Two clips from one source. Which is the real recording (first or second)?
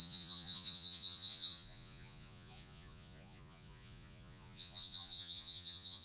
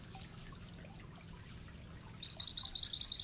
second